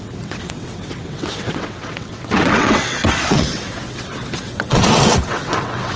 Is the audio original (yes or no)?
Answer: no